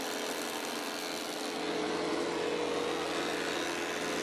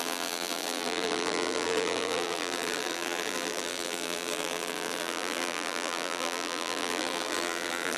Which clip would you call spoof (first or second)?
second